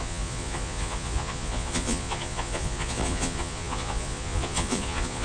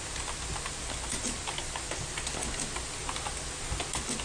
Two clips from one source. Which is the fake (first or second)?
first